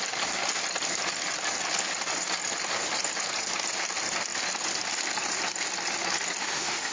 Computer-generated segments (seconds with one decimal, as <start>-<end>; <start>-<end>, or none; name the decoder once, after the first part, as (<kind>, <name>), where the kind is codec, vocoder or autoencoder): 6.4-6.9 (autoencoder, DAC-VAE)